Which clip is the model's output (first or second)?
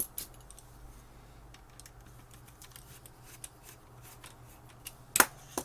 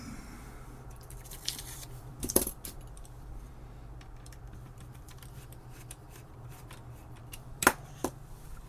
second